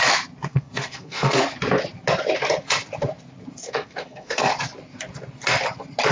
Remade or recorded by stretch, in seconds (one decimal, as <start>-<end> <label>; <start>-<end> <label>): 0.0-0.5 recorded; 0.5-1.4 remade; 1.4-3.6 recorded; 3.6-4.5 remade; 4.5-6.1 recorded